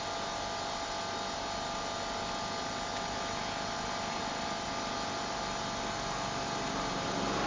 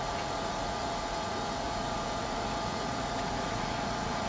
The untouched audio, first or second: first